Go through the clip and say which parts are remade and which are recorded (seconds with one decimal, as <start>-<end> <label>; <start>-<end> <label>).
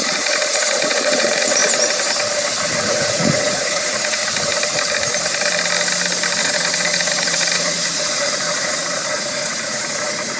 0.0-1.6 remade; 1.6-2.9 recorded; 2.9-4.2 remade; 4.2-6.4 recorded; 6.4-10.4 remade